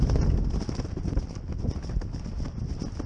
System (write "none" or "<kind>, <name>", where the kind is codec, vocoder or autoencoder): none